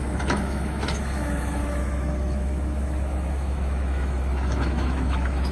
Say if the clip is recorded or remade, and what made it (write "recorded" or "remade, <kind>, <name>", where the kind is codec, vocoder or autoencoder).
remade, autoencoder, DAC-VAE